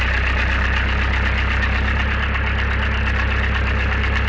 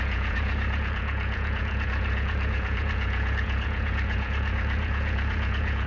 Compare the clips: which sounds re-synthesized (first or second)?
second